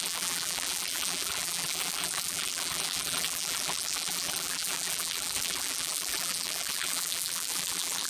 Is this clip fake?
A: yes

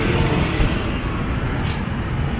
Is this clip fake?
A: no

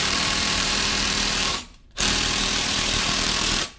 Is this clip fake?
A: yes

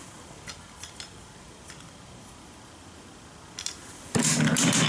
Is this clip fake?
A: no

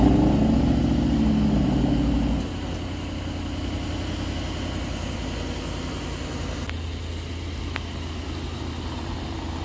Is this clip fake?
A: no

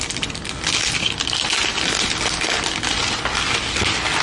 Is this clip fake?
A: no